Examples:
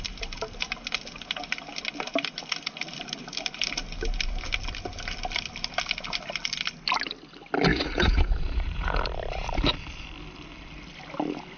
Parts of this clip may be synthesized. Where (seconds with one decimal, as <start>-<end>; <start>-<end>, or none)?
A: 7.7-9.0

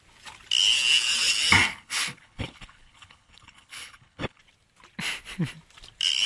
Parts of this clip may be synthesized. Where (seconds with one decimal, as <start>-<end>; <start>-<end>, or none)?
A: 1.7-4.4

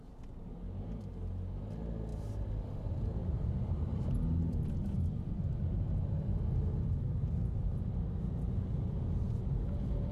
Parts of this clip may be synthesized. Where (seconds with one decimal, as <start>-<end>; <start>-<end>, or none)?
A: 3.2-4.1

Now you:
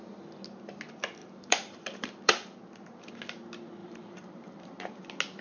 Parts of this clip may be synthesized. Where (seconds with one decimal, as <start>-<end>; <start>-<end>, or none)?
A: 1.2-2.6; 3.8-5.0

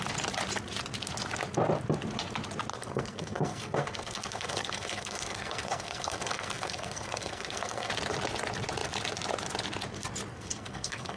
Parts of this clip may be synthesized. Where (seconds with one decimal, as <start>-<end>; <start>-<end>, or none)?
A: 2.7-7.9; 10.3-11.2

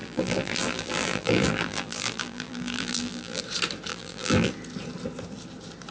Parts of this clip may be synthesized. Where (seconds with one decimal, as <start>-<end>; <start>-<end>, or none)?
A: 0.0-3.4; 3.9-4.5

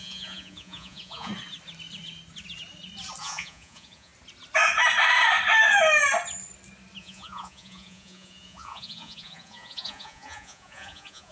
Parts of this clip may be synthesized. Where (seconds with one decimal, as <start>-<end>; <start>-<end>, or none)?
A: 0.0-1.3; 3.2-4.1; 7.0-11.3

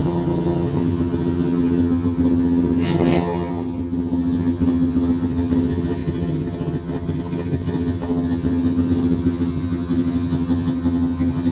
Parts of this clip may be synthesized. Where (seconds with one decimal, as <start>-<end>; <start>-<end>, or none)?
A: 0.0-11.5